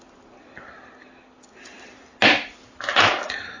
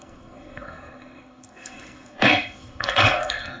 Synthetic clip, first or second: second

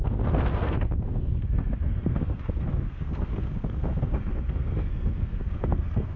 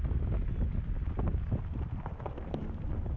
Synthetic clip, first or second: first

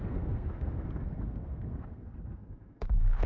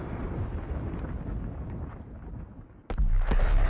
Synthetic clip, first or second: first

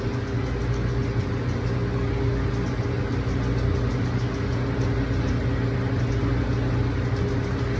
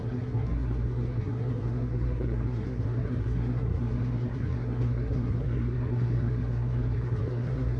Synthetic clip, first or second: second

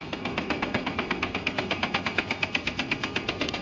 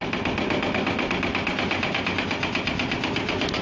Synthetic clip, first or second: first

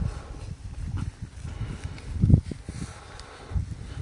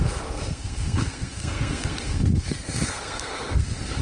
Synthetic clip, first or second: second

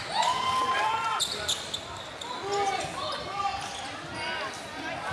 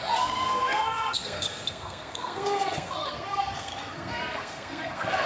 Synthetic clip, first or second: second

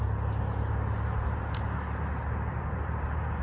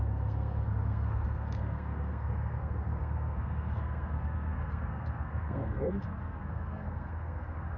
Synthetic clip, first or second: second